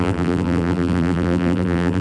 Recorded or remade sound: remade